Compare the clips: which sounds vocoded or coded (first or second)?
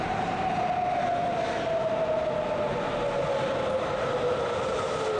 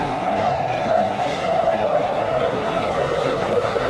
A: second